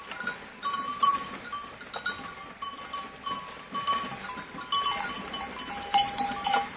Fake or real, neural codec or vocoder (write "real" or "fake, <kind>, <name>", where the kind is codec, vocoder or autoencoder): real